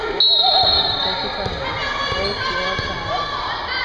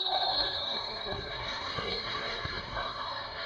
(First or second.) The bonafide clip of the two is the first